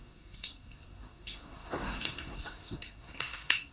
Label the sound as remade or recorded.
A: remade